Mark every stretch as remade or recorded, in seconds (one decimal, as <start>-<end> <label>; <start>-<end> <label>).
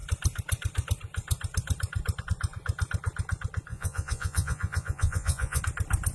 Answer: 0.0-3.7 recorded; 3.7-5.6 remade; 5.6-6.1 recorded